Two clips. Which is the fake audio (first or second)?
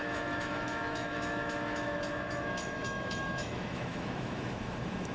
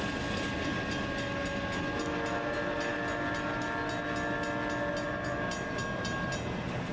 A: first